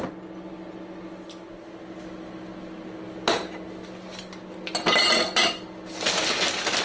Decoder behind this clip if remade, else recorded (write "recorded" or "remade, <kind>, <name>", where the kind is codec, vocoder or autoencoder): recorded